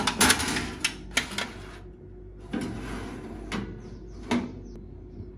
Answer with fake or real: real